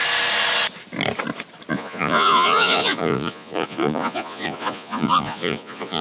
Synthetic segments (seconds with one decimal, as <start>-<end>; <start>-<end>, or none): 1.7-6.0